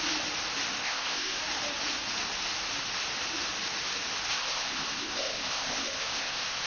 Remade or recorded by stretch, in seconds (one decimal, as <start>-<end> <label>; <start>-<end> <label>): 0.0-0.8 recorded; 0.8-1.4 remade; 1.4-4.3 recorded; 4.3-6.7 remade